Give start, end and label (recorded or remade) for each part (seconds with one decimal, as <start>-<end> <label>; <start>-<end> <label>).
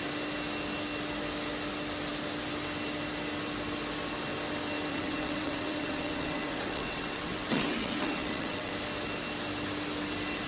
0.0-4.9 recorded; 4.9-8.7 remade; 8.7-10.5 recorded